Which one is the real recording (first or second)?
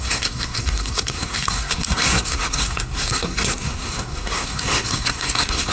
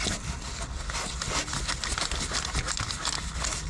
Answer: second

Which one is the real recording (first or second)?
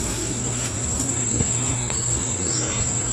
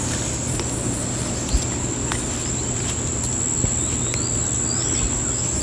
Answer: second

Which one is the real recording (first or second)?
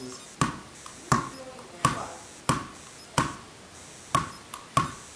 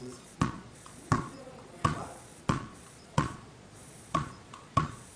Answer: first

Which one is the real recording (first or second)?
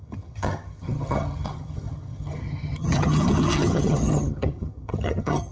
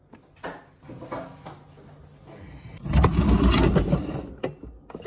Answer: second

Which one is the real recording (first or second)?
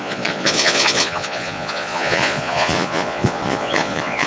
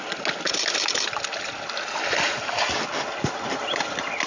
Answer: second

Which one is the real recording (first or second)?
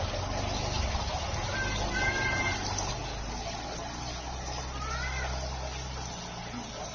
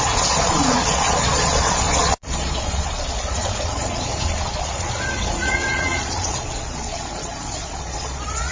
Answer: first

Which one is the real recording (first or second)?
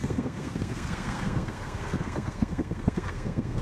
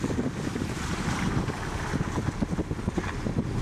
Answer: second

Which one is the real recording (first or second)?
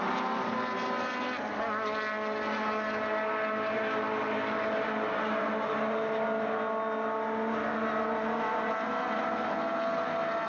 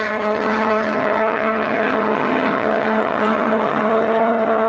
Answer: first